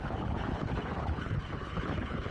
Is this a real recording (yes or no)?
no